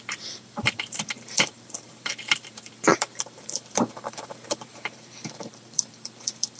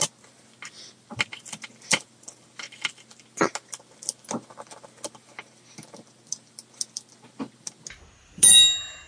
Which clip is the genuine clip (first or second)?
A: second